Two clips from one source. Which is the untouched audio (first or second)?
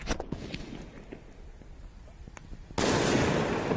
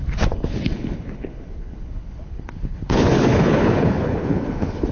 first